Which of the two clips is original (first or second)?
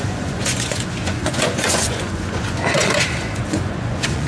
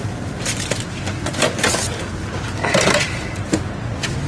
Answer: second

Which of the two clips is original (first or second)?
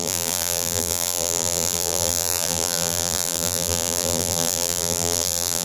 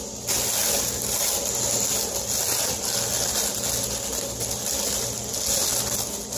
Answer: second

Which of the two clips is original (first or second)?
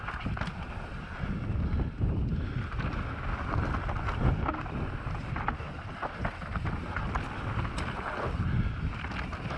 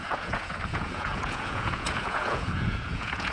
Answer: first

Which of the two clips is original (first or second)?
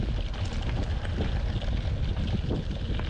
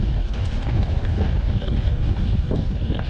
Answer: first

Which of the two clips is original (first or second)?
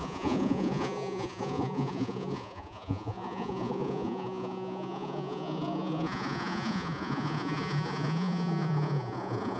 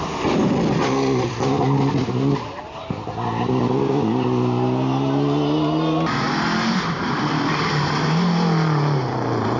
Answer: second